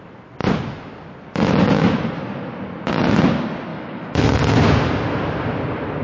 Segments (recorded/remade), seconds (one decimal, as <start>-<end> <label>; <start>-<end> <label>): 0.0-3.7 recorded; 3.7-4.5 remade; 4.5-6.0 recorded